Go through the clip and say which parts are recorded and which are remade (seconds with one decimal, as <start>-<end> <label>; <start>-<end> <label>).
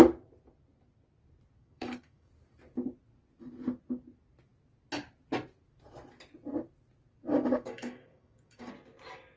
0.0-1.6 recorded; 1.6-2.3 remade; 2.3-7.3 recorded; 7.3-8.7 remade; 8.7-9.4 recorded